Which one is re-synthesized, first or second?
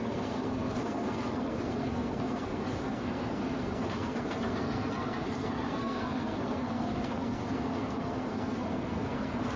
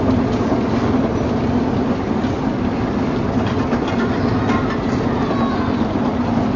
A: first